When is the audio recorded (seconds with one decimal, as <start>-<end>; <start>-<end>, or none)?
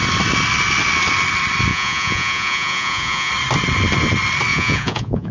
0.0-1.7; 3.3-4.5